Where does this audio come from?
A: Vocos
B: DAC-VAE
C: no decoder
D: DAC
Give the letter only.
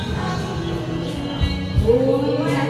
C